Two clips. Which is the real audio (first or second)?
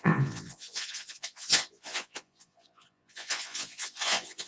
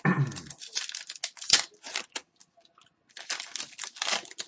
second